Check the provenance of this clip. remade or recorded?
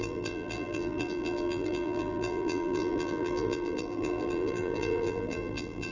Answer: remade